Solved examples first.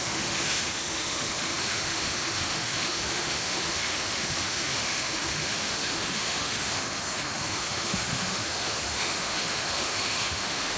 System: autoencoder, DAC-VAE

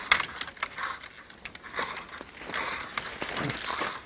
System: none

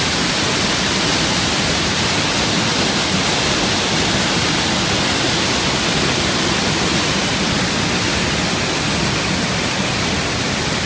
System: none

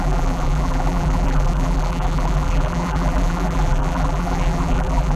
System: vocoder, BigVGAN v2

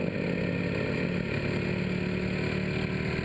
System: none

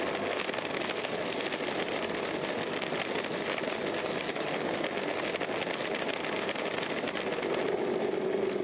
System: none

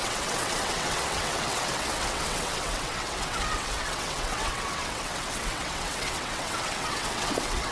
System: vocoder, WaveNeXt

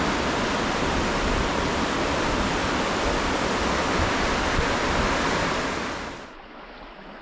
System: none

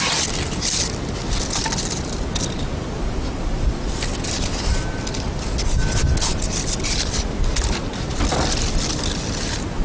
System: none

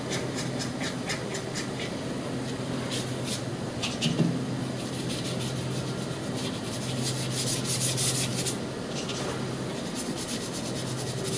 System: none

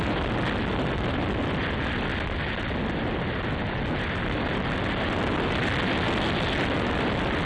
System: none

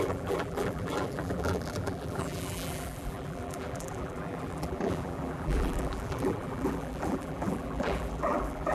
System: vocoder, BigVGAN v2